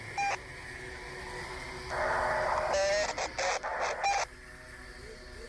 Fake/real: real